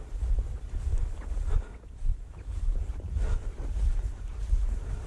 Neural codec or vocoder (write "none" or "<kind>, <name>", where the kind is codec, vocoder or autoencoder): none